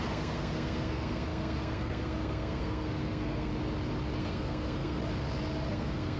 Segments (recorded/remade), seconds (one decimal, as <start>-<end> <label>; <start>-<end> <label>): 0.0-3.5 remade; 3.5-4.2 recorded; 4.2-5.0 remade; 5.0-5.7 recorded; 5.7-6.2 remade